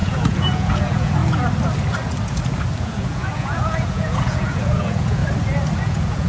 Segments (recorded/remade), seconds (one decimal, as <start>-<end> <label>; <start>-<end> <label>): 0.0-1.2 remade; 1.2-2.8 recorded; 2.8-5.2 remade; 5.2-5.8 recorded; 5.8-6.3 remade